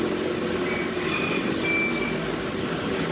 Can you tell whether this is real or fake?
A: real